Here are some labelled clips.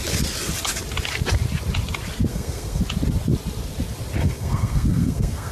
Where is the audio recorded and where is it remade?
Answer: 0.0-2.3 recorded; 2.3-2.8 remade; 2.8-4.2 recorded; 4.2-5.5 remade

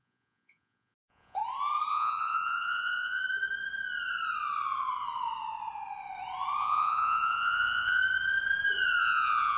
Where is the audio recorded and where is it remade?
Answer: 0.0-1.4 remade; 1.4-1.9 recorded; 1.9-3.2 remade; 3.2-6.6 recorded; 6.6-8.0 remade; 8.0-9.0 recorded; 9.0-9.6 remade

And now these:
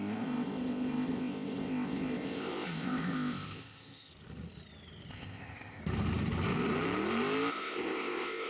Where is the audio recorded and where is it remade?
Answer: 0.0-4.1 remade; 4.1-5.1 recorded; 5.1-5.8 remade; 5.8-7.5 recorded; 7.5-8.5 remade